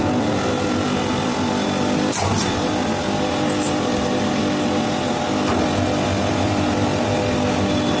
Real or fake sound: real